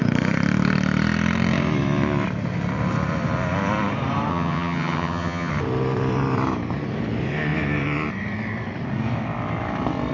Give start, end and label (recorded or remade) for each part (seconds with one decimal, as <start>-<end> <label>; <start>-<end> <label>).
0.0-4.3 recorded; 4.3-5.5 remade; 5.5-10.1 recorded